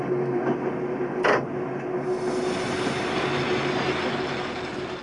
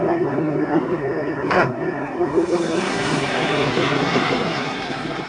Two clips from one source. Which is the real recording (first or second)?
first